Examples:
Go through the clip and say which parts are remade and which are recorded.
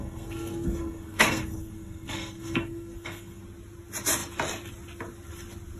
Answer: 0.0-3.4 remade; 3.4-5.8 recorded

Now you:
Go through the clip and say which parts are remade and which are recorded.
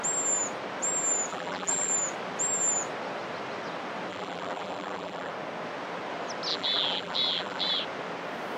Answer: 0.0-1.3 recorded; 1.3-1.9 remade; 1.9-4.1 recorded; 4.1-5.3 remade; 5.3-6.5 recorded; 6.5-7.8 remade; 7.8-8.6 recorded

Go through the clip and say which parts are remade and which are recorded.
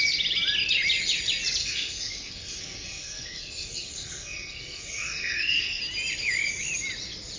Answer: 0.0-1.6 recorded; 1.6-5.8 remade; 5.8-7.4 recorded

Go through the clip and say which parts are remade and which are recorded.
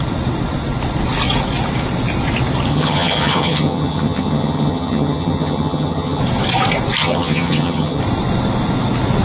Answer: 0.0-2.7 recorded; 2.7-6.2 remade; 6.2-7.0 recorded; 7.0-8.0 remade; 8.0-9.2 recorded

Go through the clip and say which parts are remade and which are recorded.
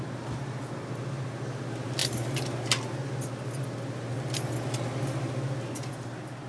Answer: 0.0-6.5 recorded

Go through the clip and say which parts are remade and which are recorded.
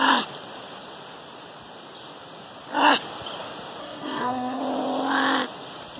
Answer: 0.0-3.8 recorded; 3.8-4.6 remade; 4.6-6.0 recorded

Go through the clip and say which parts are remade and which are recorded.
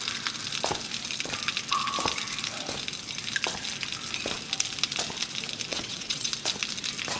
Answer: 0.0-5.7 recorded; 5.7-6.3 remade; 6.3-7.2 recorded